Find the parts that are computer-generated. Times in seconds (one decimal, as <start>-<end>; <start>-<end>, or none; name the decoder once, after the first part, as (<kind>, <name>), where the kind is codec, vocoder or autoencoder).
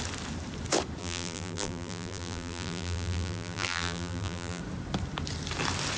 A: 1.0-4.6 (vocoder, BigVGAN v2)